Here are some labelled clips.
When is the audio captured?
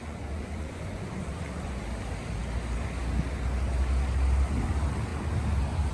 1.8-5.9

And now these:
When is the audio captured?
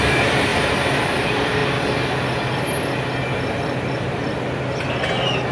0.0-5.5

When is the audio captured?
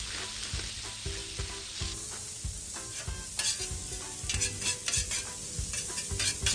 0.0-6.5